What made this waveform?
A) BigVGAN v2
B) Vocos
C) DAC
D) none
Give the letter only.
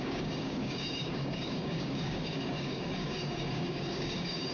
C